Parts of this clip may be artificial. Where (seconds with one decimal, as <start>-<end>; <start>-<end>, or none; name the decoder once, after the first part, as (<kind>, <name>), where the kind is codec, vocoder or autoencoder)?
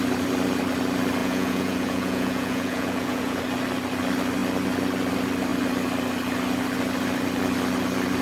1.2-3.4 (vocoder, Vocos)